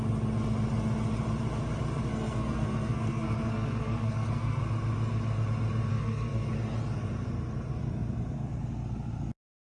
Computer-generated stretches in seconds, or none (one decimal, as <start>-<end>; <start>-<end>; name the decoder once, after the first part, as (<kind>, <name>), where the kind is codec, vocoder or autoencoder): 2.1-4.6 (codec, SNAC); 5.9-6.5

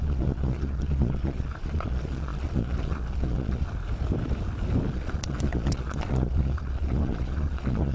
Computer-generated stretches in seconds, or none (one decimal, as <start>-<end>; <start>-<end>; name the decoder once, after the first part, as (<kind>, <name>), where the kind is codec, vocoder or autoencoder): 0.0-3.7 (vocoder, Vocos); 4.9-7.9